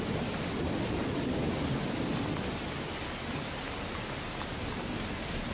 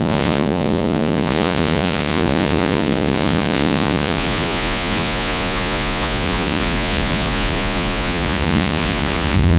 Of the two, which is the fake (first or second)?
second